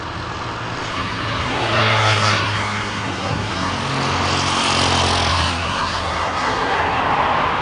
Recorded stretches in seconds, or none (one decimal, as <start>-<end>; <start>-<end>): 0.0-0.9; 3.7-5.3; 7.0-7.6